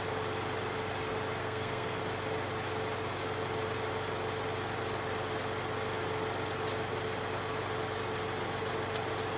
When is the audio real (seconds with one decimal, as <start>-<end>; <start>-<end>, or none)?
0.0-1.4; 2.0-9.4